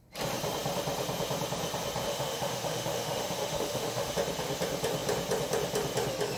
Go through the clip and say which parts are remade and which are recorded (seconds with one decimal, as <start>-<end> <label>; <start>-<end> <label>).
0.0-2.1 recorded; 2.1-4.1 remade; 4.1-6.4 recorded